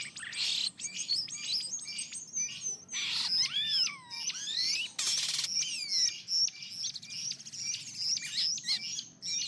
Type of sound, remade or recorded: recorded